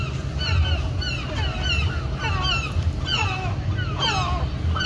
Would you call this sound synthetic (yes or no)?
no